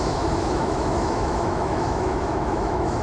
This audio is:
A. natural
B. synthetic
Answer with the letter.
B